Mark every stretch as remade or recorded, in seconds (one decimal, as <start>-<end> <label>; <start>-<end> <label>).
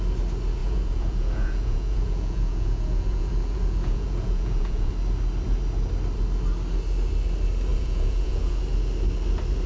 0.0-0.6 recorded; 0.6-4.9 remade; 4.9-7.7 recorded; 7.7-8.6 remade; 8.6-9.7 recorded